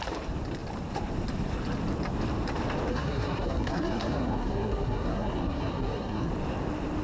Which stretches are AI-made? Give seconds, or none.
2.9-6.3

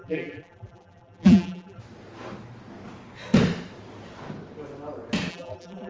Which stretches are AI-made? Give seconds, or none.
0.0-1.8; 5.3-5.9

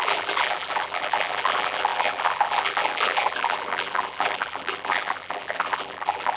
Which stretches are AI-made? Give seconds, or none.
0.0-6.4

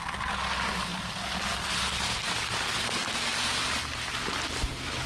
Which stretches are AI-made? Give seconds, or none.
none